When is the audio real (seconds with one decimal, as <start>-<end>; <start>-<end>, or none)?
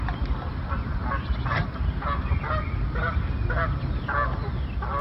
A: 0.0-5.0